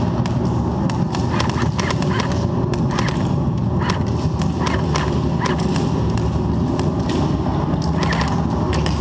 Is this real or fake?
real